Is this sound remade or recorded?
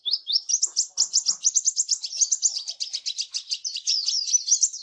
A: recorded